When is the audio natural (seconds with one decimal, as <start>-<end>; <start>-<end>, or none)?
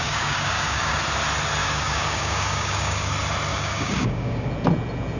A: 1.0-1.6; 3.1-3.5; 4.5-5.2